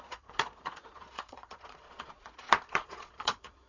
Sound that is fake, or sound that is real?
fake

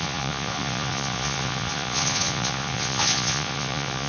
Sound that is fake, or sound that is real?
fake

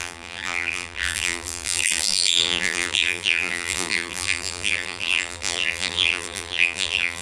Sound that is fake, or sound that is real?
fake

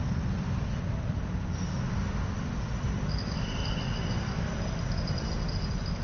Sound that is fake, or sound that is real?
real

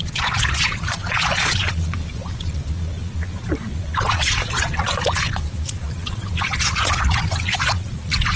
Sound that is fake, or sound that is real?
fake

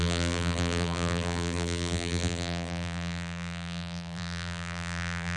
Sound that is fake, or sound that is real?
fake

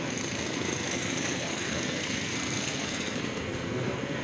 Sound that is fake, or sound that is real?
fake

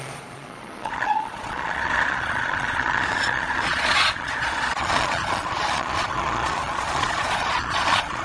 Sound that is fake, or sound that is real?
fake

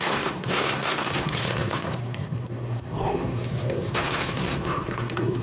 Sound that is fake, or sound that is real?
fake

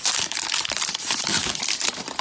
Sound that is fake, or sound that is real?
fake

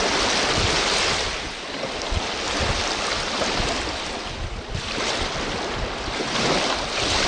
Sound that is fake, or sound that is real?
real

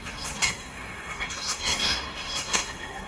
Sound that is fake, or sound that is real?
fake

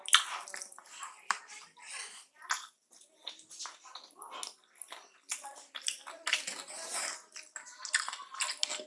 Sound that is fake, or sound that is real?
real